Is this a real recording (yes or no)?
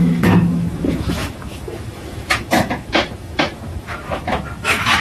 no